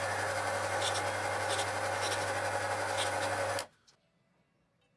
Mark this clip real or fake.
real